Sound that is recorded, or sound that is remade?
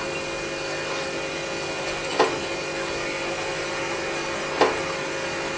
recorded